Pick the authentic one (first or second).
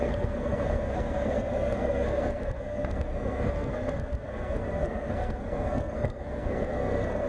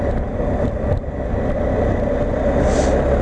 second